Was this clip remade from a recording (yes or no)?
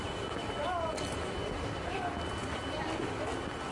no